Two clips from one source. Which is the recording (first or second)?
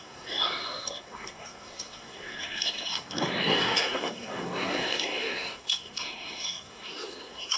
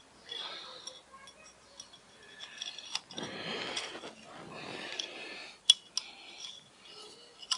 second